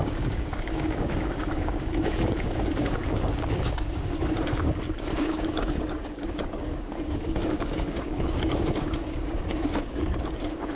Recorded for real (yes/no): no